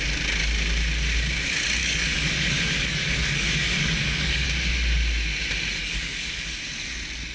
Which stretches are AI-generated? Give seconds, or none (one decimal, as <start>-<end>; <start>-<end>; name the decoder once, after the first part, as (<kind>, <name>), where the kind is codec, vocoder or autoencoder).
1.8-4.5 (codec, DAC); 5.8-6.3